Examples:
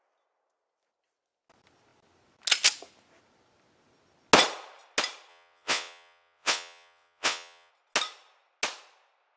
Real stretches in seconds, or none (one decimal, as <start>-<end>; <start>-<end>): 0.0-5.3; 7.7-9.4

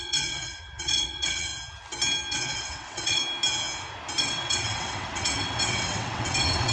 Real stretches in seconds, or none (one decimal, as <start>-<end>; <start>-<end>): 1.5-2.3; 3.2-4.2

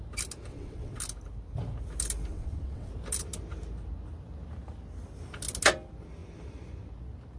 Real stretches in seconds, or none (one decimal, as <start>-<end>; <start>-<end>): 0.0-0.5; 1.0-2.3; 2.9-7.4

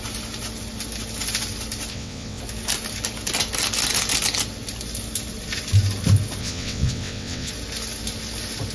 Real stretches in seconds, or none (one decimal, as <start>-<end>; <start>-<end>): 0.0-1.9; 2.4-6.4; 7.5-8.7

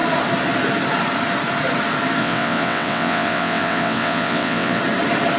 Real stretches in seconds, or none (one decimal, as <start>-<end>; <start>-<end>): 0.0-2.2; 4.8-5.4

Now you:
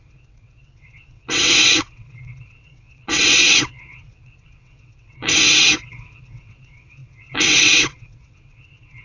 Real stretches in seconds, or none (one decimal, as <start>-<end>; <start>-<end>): none

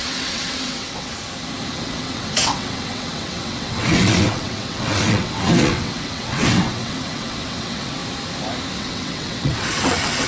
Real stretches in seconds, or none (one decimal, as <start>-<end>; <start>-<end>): 1.1-1.7; 8.0-8.8